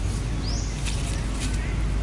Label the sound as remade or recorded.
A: recorded